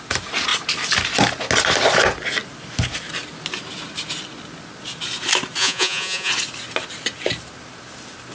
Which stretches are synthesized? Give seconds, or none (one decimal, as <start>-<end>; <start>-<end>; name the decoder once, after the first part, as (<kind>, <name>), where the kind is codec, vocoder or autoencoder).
5.6-6.3 (vocoder, Vocos)